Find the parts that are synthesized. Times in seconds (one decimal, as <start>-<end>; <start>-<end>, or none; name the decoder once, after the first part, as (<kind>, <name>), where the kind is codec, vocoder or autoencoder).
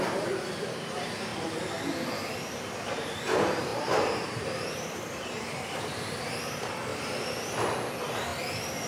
0.0-1.3 (vocoder, BigVGAN v2); 2.4-6.9; 7.9-8.3